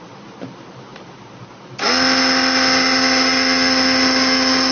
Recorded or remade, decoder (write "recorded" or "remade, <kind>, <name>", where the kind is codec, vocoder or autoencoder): recorded